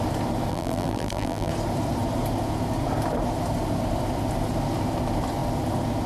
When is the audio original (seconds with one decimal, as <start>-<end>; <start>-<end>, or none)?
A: 0.0-0.5; 1.5-6.1